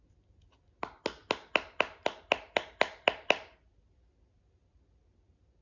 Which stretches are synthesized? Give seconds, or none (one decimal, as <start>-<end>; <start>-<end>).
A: none

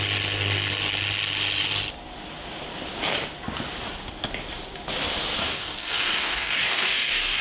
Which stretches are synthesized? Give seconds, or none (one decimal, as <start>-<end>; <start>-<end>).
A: 5.4-7.4

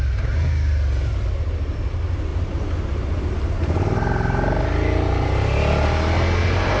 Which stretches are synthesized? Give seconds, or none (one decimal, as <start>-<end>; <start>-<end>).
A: none

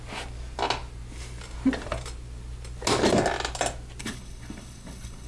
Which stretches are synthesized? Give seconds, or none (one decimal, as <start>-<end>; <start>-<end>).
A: 4.0-5.3